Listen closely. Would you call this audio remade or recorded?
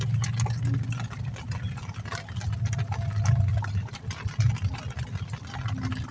recorded